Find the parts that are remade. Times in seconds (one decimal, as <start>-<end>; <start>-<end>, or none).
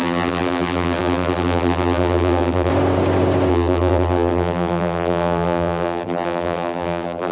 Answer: 0.0-2.7; 3.5-7.3